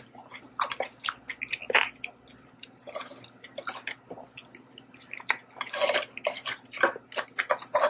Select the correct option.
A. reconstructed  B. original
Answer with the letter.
B